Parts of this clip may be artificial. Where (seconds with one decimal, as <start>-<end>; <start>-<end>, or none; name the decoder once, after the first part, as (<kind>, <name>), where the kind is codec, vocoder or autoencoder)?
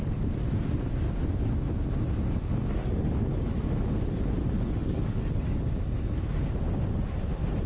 2.8-3.7 (codec, DAC); 4.8-5.6